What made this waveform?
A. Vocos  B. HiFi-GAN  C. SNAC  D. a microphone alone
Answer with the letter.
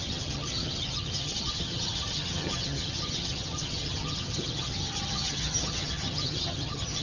B